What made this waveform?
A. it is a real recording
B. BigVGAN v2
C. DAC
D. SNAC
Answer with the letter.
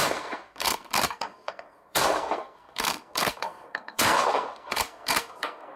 D